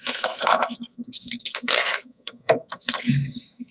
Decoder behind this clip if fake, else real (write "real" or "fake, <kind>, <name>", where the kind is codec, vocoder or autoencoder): fake, codec, SNAC